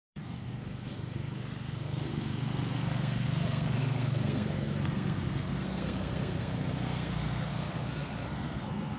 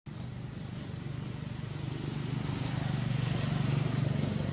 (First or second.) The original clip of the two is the second